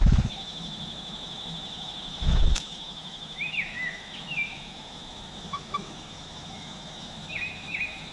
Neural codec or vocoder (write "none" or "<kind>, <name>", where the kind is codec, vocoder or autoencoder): autoencoder, DAC-VAE